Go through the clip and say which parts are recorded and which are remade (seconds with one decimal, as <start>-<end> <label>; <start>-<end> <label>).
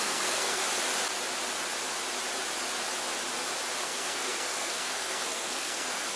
0.0-0.6 remade; 0.6-3.8 recorded; 3.8-6.2 remade